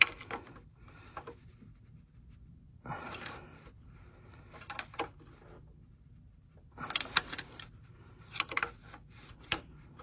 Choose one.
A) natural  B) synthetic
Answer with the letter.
A